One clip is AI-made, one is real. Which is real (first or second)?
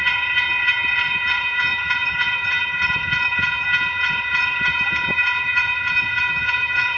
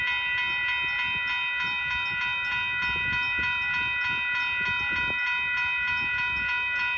second